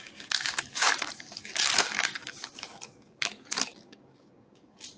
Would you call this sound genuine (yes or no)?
no